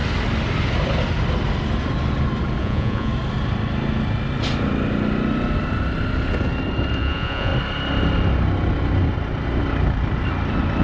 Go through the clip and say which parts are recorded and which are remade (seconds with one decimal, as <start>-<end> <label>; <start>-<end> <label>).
0.0-2.6 recorded; 2.6-3.1 remade; 3.1-7.0 recorded; 7.0-7.5 remade; 7.5-10.8 recorded